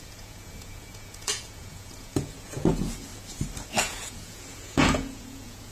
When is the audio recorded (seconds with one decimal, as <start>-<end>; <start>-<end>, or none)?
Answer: 3.1-3.7